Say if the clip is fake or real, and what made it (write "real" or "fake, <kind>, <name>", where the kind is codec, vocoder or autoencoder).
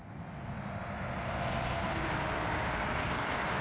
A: real